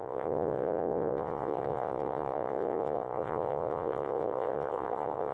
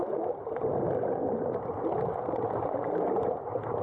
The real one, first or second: second